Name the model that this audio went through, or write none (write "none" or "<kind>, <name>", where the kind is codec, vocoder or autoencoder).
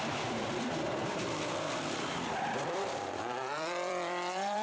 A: vocoder, BigVGAN v2